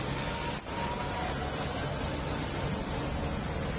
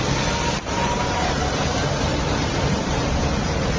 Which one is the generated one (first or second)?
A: second